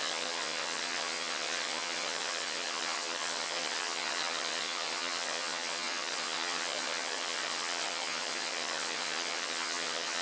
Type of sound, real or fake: fake